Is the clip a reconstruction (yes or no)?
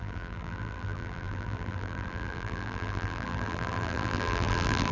yes